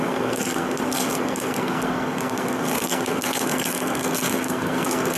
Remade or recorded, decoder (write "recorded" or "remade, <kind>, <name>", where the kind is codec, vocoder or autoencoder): remade, codec, SNAC